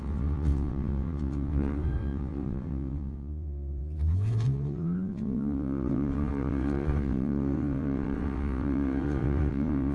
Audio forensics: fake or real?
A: fake